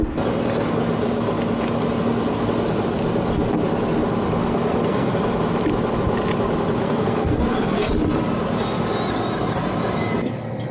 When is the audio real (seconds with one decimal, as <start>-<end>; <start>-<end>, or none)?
0.0-4.4; 5.1-6.8; 7.9-10.7